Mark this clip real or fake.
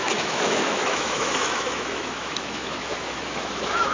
fake